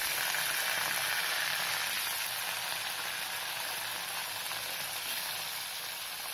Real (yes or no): yes